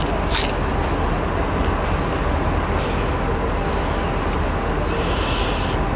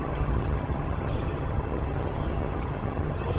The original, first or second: first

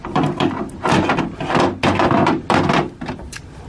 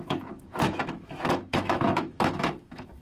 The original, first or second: first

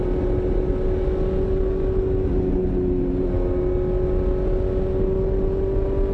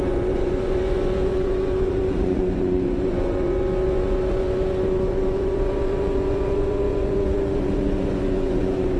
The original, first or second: first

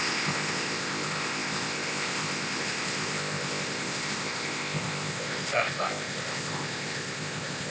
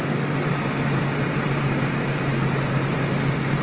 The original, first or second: second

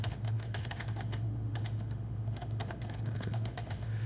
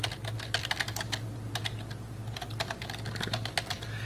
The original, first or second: second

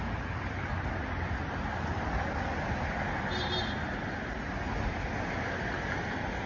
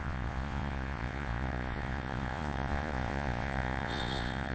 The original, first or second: first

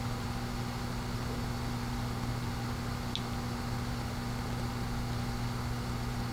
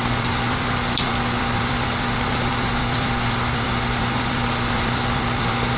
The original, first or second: first